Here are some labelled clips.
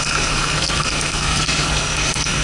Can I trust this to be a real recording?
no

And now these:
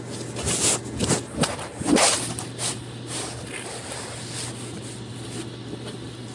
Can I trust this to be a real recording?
yes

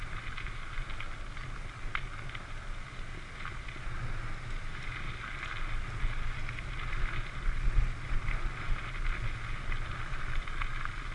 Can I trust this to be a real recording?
yes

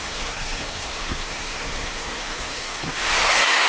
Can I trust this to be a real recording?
no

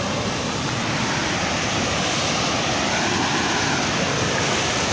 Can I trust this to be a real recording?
yes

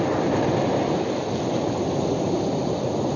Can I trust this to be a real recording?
yes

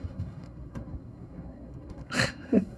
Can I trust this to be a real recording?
no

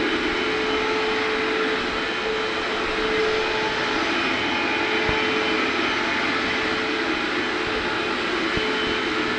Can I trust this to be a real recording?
yes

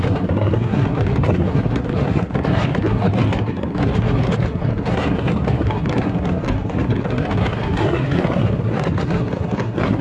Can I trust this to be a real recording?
no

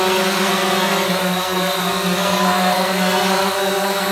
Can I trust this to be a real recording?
no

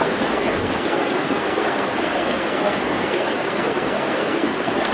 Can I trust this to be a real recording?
no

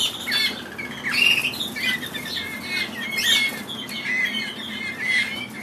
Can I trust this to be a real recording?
yes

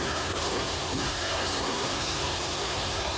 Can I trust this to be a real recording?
no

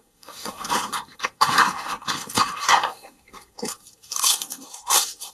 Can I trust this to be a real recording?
no